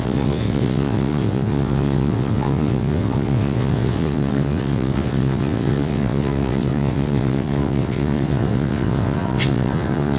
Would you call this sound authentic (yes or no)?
no